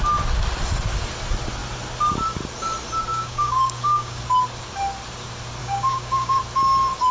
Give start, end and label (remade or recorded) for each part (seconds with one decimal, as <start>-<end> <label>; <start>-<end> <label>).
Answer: 0.0-3.1 recorded; 3.1-4.2 remade; 4.2-5.6 recorded; 5.6-6.4 remade; 6.4-7.1 recorded